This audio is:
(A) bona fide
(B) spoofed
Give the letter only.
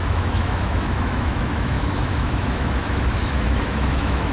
B